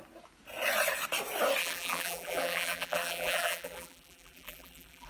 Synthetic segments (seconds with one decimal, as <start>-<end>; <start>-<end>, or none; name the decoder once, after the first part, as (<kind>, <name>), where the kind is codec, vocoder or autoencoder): 1.6-5.1 (vocoder, BigVGAN v2)